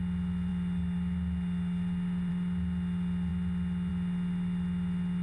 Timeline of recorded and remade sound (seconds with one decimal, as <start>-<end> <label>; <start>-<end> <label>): 0.0-5.2 recorded